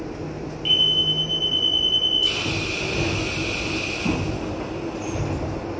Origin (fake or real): real